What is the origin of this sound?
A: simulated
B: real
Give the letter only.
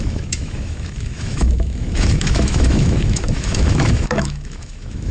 A